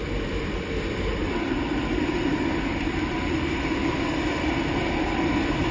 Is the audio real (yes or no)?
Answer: yes